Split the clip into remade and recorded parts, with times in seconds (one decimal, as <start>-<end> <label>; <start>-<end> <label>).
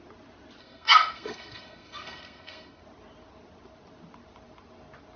0.0-0.6 recorded; 0.6-2.8 remade; 2.8-5.2 recorded